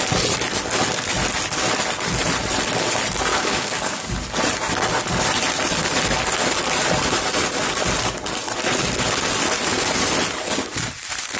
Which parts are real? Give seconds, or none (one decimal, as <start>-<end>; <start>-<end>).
0.0-3.3; 4.1-11.4